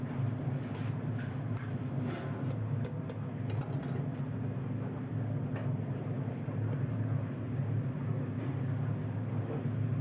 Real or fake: real